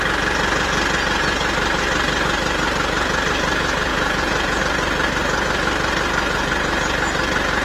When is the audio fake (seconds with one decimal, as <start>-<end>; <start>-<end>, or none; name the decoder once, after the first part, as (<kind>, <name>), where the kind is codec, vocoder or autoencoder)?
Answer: 3.9-4.6 (vocoder, Vocos)